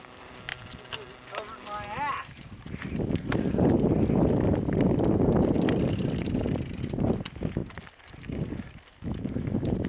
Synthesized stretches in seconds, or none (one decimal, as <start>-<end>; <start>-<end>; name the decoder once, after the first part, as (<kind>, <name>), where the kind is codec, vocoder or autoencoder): none